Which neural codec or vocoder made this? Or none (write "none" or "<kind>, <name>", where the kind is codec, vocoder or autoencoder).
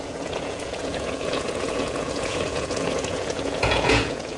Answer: vocoder, Vocos